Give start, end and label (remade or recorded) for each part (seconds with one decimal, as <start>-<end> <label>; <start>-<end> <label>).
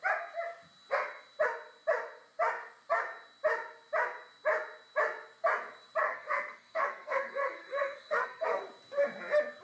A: 0.0-6.0 recorded; 6.0-8.6 remade; 8.6-9.6 recorded